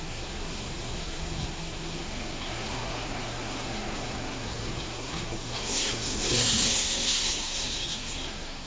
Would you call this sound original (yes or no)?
no